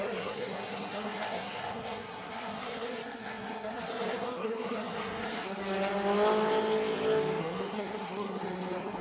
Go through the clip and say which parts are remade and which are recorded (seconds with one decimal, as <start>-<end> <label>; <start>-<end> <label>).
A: 0.0-5.6 remade; 5.6-7.4 recorded; 7.4-9.0 remade